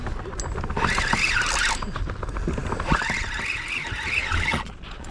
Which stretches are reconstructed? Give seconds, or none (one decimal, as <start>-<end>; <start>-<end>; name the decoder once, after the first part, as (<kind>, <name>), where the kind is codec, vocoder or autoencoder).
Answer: 4.2-5.1 (vocoder, Vocos)